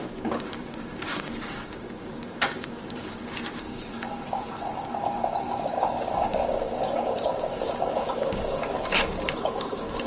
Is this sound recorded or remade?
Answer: remade